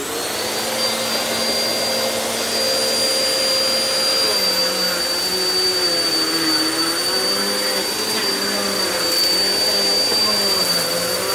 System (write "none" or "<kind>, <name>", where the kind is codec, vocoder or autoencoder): none